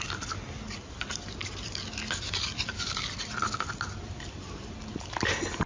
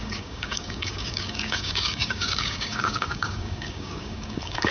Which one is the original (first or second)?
first